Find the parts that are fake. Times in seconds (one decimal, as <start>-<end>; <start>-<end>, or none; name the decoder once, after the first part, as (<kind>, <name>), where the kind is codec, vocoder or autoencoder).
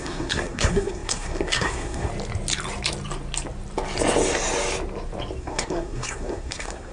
0.0-2.1 (codec, SNAC); 5.4-6.9